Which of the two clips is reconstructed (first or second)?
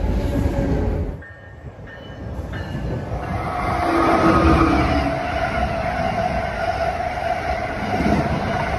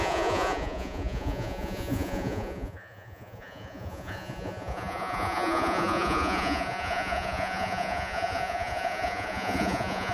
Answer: second